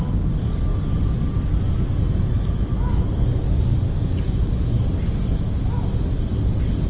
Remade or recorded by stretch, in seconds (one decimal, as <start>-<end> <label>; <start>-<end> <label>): 0.0-6.9 recorded